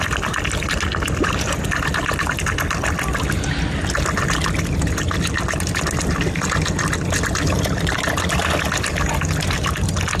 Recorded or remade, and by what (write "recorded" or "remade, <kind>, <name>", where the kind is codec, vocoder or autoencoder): recorded